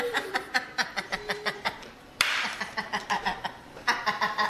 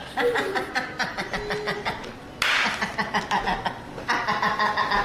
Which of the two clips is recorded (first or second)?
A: second